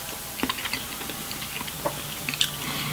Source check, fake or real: real